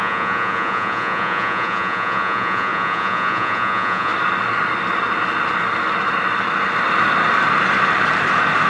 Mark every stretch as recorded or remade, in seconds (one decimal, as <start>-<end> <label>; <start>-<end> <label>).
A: 0.0-4.1 remade; 4.1-8.7 recorded